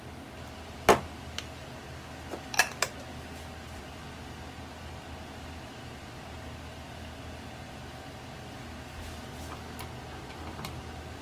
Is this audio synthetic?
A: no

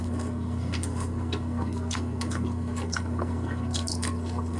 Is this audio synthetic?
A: yes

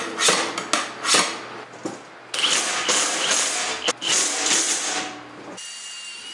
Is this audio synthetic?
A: no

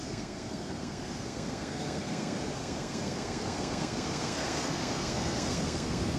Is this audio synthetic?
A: yes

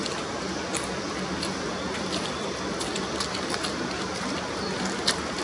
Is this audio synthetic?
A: no